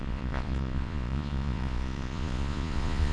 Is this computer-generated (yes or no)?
yes